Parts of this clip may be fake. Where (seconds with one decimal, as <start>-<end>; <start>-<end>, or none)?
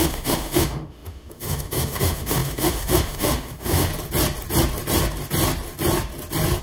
0.0-3.9